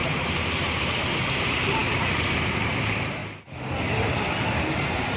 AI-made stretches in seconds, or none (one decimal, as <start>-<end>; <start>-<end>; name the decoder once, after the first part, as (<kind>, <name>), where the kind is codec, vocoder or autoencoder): 0.0-3.2 (vocoder, BigVGAN v2); 4.1-5.2